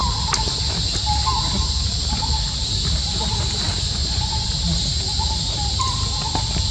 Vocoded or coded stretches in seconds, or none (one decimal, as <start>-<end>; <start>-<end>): 4.0-4.5